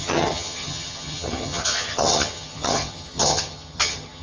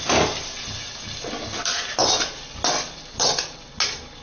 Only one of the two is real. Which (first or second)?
second